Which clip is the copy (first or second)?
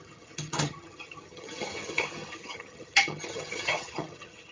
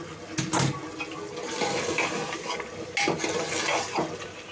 first